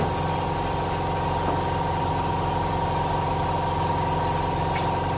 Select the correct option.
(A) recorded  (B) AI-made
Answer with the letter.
A